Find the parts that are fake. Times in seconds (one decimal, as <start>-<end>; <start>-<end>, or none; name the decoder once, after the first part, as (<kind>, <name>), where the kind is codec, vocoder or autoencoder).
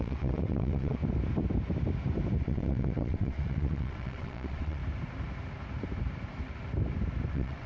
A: 0.0-1.0 (vocoder, WaveNeXt); 2.4-4.8; 7.3-7.7